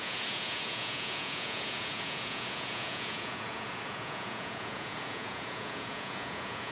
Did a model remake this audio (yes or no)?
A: yes